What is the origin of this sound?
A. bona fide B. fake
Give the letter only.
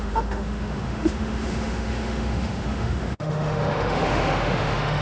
B